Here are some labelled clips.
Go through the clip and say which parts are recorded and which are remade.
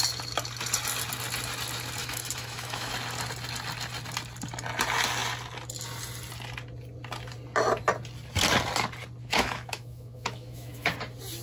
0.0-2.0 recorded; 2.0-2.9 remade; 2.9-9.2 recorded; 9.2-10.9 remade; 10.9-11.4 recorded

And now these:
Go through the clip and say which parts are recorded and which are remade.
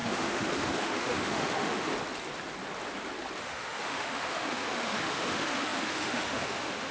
0.0-1.9 remade; 1.9-3.4 recorded; 3.4-6.9 remade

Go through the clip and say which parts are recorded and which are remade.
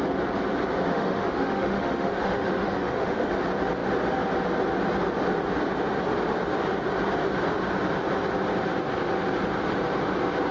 0.0-0.9 recorded; 0.9-3.3 remade; 3.3-10.5 recorded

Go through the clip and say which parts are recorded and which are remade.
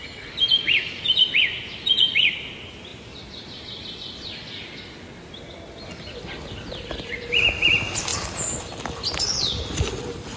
0.0-10.4 recorded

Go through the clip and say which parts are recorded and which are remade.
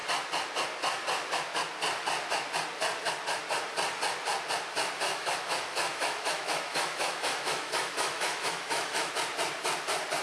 0.0-5.1 recorded; 5.1-9.1 remade; 9.1-10.2 recorded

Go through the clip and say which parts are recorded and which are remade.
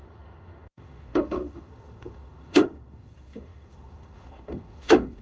0.0-5.2 remade